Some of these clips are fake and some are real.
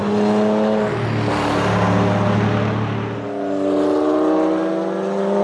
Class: real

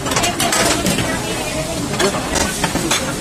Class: real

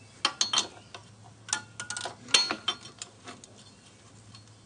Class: real